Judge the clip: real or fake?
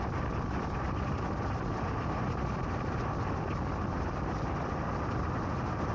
real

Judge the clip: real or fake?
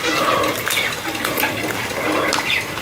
real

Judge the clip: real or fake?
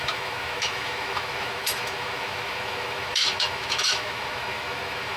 fake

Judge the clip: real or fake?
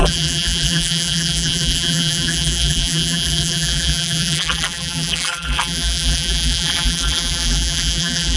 fake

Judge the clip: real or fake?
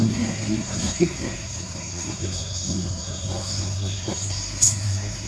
fake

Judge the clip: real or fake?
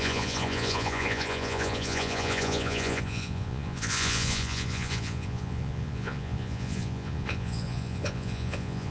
fake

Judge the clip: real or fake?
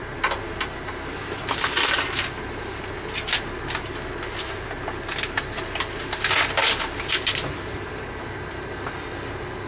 real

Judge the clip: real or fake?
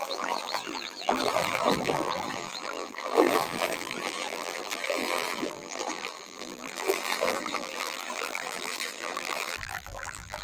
fake